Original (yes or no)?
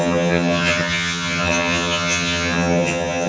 no